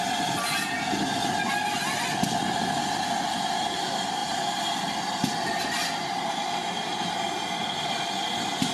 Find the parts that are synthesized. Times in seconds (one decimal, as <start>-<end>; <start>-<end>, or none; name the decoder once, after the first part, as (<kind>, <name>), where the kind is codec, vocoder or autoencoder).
none